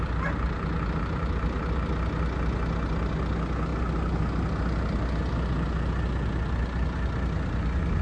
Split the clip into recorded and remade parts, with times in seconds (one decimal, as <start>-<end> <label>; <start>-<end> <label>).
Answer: 0.0-8.0 recorded